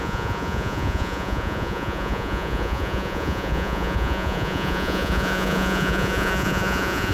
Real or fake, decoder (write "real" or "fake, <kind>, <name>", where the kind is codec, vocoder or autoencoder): fake, vocoder, Vocos